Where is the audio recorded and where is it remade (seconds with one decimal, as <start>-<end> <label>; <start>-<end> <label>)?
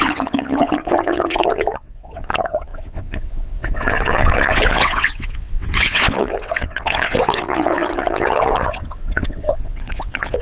0.0-10.4 remade